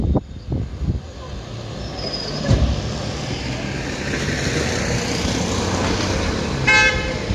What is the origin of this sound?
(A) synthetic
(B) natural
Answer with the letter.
B